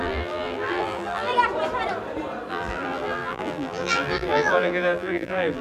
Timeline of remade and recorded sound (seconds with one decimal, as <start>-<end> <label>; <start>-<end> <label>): 0.0-1.3 remade; 1.3-2.5 recorded; 2.5-5.6 remade